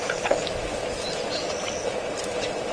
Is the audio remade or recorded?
recorded